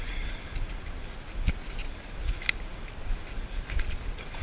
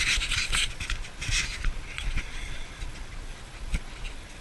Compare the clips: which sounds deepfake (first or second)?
second